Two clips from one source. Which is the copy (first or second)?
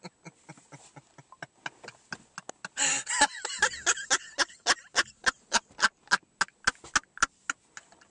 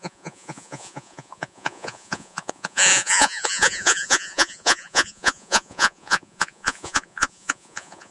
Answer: second